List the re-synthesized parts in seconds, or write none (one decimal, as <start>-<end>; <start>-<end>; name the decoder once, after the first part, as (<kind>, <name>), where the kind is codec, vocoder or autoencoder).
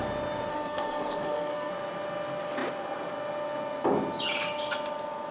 0.5-1.7 (codec, SNAC)